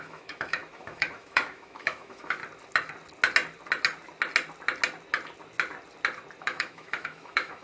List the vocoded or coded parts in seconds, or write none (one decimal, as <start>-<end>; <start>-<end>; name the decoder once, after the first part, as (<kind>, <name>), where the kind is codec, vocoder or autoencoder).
0.0-2.4 (autoencoder, DAC-VAE); 6.4-7.6